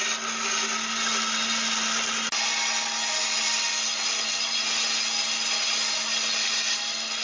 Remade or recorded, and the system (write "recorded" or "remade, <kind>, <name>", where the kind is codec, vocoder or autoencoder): recorded